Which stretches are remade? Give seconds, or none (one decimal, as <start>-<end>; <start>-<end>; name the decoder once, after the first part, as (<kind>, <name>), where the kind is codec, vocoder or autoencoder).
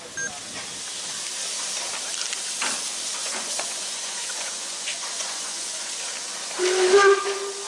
3.2-6.0 (vocoder, Vocos)